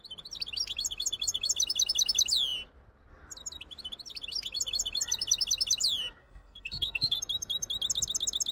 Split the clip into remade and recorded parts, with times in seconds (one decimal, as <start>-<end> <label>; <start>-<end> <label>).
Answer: 0.0-6.2 recorded; 6.2-7.2 remade; 7.2-8.5 recorded